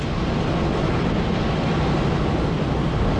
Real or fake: real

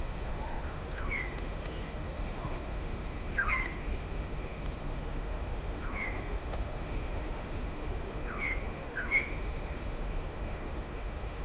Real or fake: fake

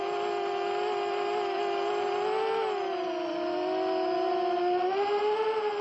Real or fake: real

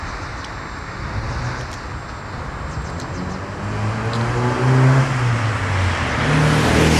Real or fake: real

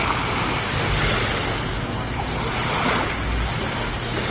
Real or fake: real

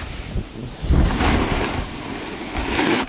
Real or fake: real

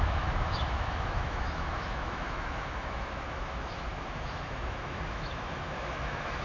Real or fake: fake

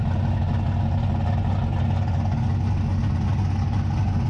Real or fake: real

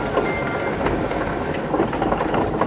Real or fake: real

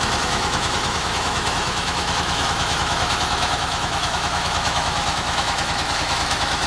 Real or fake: fake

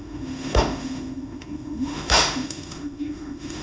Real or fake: fake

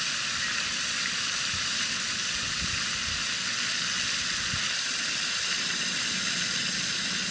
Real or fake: real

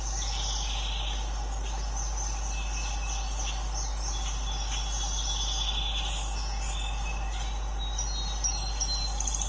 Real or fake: real